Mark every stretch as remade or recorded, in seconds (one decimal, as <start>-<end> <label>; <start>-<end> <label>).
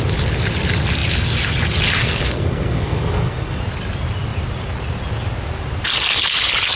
0.0-2.0 recorded; 2.0-3.6 remade; 3.6-6.8 recorded